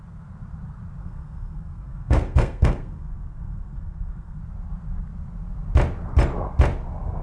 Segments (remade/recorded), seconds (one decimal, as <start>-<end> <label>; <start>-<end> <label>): 0.0-1.0 recorded; 1.0-4.4 remade; 4.4-7.2 recorded